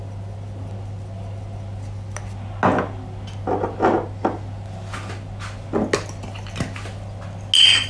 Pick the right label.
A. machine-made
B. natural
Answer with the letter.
B